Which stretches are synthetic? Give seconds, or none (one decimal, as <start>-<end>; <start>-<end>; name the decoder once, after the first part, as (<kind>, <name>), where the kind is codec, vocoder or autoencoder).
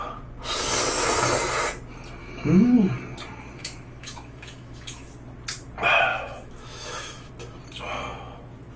2.2-2.7 (autoencoder, DAC-VAE); 3.6-5.1; 6.1-7.3